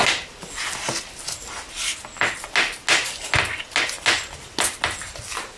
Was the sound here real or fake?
real